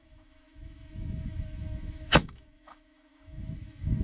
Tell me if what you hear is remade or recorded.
remade